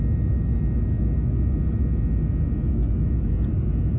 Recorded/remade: recorded